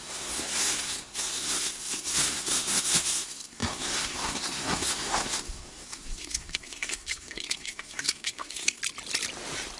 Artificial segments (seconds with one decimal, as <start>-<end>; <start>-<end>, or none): 0.0-8.8